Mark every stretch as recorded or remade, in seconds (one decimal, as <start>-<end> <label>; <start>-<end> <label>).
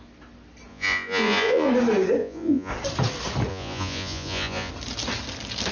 0.0-0.7 recorded; 0.7-1.7 remade; 1.7-2.2 recorded; 2.2-2.7 remade; 2.7-3.5 recorded; 3.5-4.7 remade; 4.7-5.7 recorded